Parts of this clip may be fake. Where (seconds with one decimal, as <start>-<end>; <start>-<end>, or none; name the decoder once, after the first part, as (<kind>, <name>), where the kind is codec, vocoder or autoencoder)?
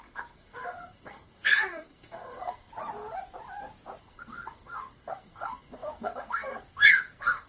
0.0-2.7 (codec, SNAC); 4.0-7.5